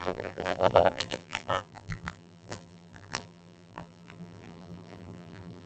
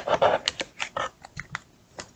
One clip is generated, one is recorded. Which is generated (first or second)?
first